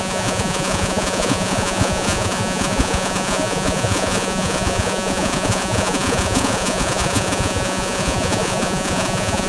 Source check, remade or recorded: remade